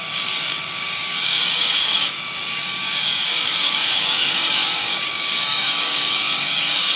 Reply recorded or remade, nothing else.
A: remade